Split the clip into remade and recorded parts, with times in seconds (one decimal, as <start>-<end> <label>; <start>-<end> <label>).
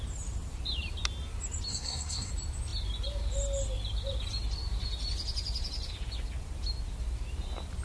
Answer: 0.0-1.7 recorded; 1.7-2.3 remade; 2.3-7.8 recorded